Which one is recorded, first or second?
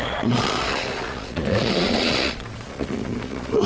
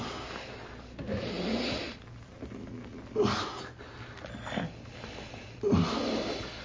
second